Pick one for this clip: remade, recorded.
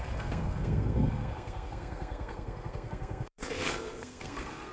remade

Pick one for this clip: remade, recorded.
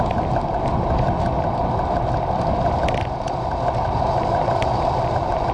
recorded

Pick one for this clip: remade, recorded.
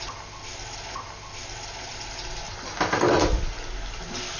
recorded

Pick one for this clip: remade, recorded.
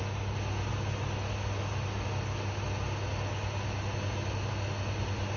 recorded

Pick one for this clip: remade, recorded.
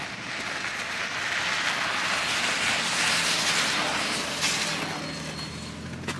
recorded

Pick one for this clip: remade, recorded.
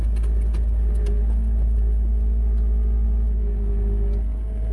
recorded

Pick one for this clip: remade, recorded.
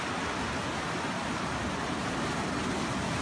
recorded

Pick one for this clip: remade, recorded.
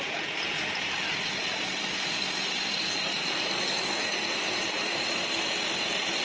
recorded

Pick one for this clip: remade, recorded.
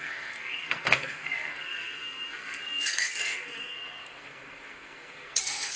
remade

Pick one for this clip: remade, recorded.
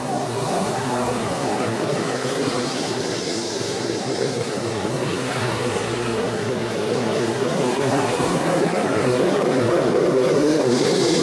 remade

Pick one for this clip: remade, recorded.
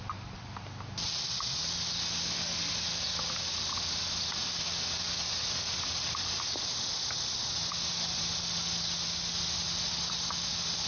recorded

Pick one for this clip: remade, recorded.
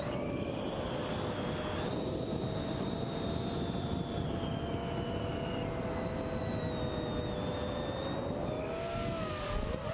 recorded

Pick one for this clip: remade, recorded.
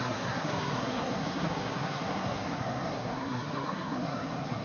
remade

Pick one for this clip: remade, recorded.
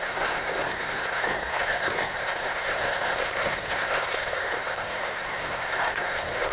remade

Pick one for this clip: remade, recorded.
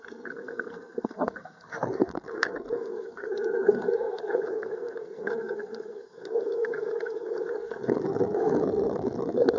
remade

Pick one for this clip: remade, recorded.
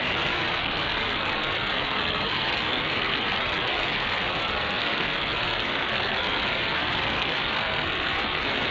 remade